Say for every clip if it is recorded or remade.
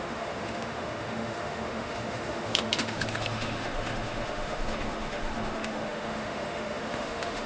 remade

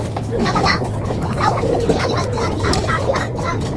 remade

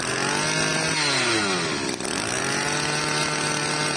recorded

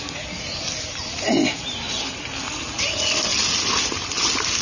recorded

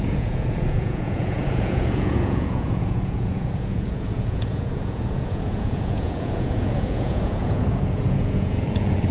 remade